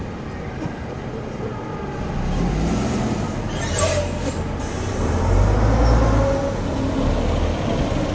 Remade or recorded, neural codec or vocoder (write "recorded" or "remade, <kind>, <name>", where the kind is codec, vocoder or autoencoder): recorded